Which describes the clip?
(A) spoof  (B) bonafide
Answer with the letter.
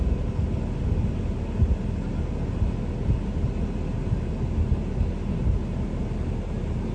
B